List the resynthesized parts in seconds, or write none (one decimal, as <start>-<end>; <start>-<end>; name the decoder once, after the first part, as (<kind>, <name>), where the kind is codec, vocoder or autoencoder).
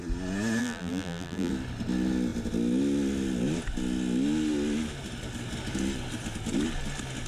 0.6-1.5 (vocoder, BigVGAN v2)